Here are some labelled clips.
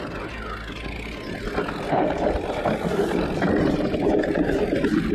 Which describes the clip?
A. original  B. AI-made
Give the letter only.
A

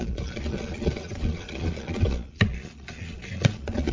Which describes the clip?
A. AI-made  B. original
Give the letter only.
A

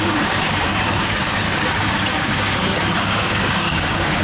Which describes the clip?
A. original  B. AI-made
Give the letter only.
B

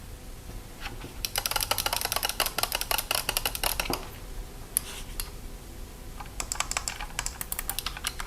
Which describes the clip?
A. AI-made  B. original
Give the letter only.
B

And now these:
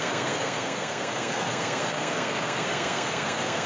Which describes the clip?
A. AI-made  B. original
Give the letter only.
A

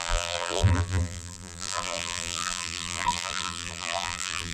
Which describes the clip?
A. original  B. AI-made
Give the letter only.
B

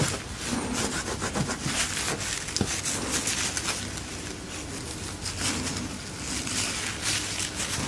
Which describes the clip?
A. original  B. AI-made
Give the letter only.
A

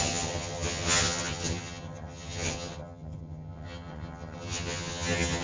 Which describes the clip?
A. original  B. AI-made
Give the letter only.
B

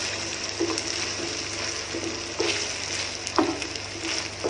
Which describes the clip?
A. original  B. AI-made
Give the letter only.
A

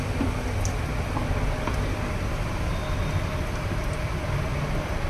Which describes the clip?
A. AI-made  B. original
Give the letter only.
B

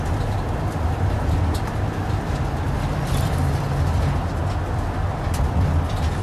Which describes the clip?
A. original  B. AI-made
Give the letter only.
A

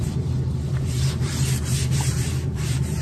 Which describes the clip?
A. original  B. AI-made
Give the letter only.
B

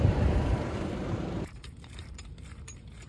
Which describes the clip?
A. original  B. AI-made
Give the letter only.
B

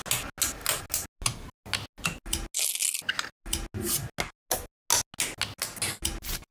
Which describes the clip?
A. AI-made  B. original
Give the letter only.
B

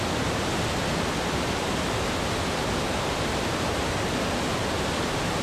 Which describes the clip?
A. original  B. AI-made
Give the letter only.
A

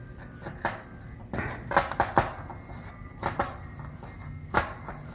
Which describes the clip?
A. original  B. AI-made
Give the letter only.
A